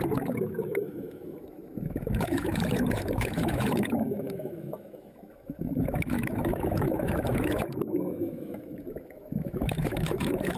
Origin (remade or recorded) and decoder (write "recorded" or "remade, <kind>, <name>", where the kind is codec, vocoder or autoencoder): remade, autoencoder, DAC-VAE